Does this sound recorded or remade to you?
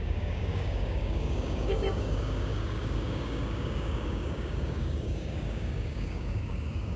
remade